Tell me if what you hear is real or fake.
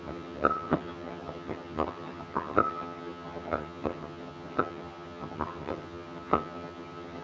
fake